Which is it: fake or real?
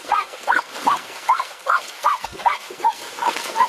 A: fake